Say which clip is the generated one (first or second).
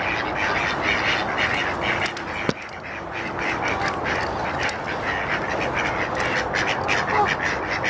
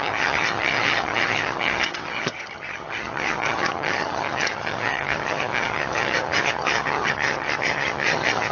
second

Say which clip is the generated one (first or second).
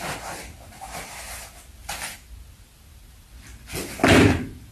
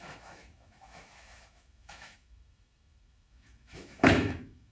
second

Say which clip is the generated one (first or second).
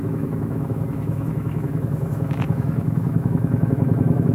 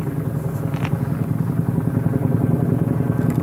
first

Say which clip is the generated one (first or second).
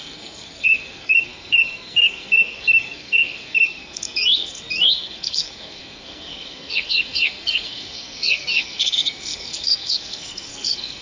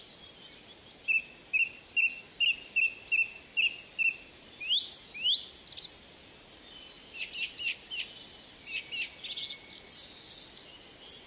first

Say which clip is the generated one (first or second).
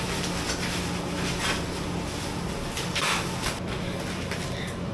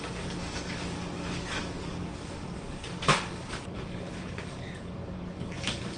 second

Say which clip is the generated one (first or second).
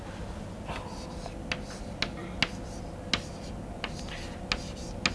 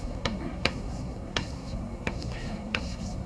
second